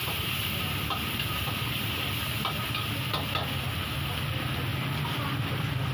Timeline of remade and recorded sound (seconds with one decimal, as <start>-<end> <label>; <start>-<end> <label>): 0.0-5.9 recorded